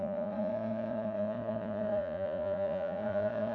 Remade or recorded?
remade